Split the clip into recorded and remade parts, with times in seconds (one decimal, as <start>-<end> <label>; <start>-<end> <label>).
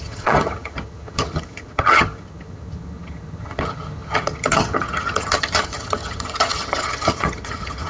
0.0-7.9 remade